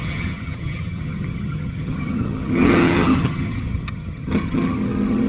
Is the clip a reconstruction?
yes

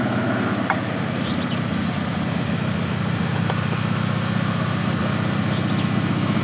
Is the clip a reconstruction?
no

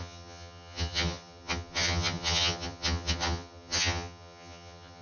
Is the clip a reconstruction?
yes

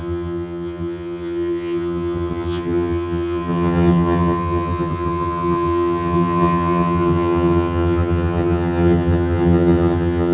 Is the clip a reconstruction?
yes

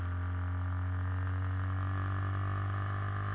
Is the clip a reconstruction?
no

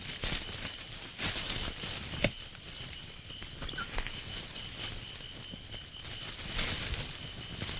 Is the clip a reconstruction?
no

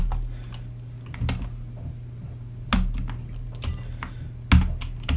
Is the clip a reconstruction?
no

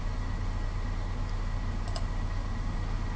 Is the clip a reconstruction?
no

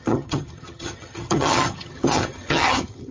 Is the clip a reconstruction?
yes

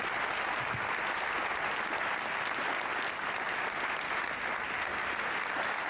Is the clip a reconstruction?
no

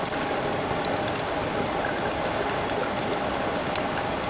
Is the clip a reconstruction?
no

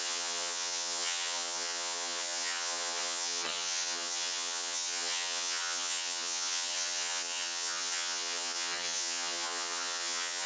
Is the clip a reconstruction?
yes